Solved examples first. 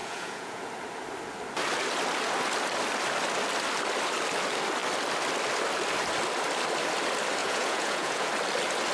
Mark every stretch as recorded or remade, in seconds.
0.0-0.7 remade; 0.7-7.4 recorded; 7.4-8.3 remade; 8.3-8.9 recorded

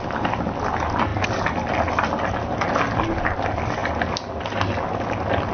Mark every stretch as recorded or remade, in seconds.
0.0-5.5 recorded

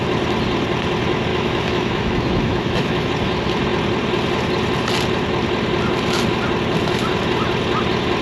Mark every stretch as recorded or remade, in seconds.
0.0-1.3 recorded; 1.3-3.1 remade; 3.1-8.2 recorded

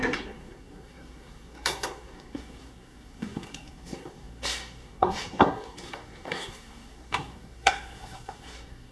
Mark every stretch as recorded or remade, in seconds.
0.0-8.9 remade

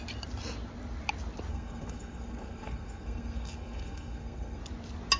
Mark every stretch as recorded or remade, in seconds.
0.0-1.5 recorded; 1.5-4.6 remade; 4.6-5.2 recorded

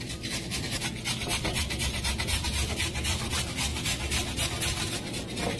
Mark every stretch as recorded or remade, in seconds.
0.0-1.5 recorded; 1.5-2.7 remade; 2.7-5.6 recorded

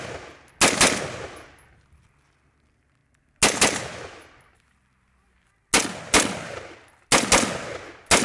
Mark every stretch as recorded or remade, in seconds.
0.0-8.2 recorded

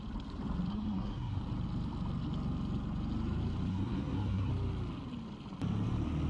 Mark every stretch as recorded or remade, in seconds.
0.0-0.7 recorded; 0.7-1.4 remade; 1.4-3.7 recorded; 3.7-4.5 remade; 4.5-6.3 recorded